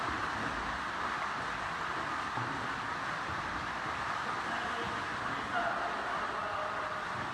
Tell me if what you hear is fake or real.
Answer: real